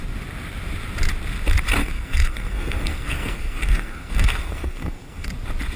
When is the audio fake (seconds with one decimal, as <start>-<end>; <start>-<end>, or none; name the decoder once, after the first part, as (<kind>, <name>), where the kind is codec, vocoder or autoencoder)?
1.8-5.3 (codec, SNAC)